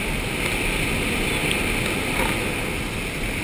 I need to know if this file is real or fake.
real